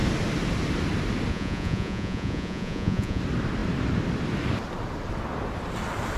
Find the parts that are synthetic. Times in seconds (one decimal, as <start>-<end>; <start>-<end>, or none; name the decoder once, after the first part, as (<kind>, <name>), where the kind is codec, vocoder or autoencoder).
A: 1.3-3.2 (vocoder, Vocos)